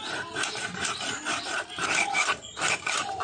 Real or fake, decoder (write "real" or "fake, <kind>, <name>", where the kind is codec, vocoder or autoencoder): real